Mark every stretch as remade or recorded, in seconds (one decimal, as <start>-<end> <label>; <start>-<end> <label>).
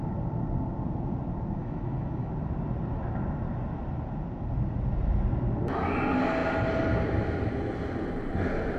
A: 0.0-1.6 recorded; 1.6-2.3 remade; 2.3-8.8 recorded